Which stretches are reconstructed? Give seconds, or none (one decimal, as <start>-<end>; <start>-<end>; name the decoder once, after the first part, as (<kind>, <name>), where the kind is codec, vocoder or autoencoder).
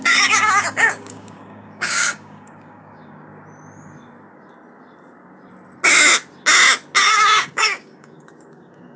0.0-3.3 (codec, DAC); 7.0-9.0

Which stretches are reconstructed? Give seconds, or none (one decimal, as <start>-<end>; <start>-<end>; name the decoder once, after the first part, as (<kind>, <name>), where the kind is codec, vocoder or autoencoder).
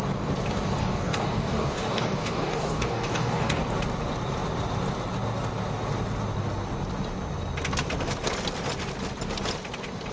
0.8-3.6 (codec, DAC)